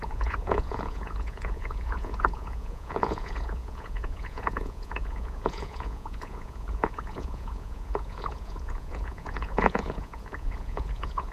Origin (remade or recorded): remade